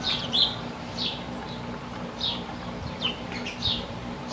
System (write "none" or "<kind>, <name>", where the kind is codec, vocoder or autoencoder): vocoder, BigVGAN v2